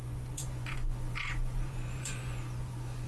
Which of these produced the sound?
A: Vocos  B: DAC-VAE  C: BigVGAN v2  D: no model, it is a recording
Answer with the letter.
A